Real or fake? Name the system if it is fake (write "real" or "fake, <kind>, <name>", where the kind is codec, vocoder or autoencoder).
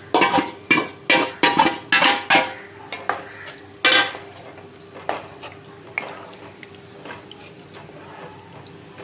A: real